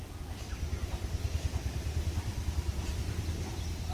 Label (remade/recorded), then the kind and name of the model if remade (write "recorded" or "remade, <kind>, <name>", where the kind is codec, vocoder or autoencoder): recorded